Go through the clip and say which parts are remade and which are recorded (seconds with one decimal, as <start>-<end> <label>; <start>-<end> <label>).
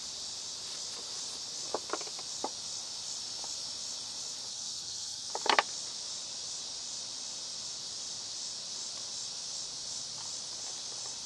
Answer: 0.0-4.5 recorded; 4.5-5.3 remade; 5.3-11.3 recorded